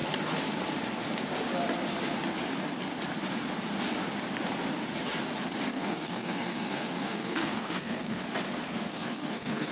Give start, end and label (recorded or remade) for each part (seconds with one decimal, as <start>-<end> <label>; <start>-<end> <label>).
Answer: 0.0-5.7 recorded; 5.7-8.2 remade; 8.2-8.9 recorded; 8.9-9.7 remade